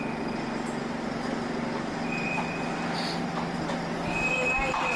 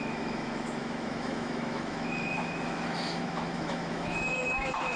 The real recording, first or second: first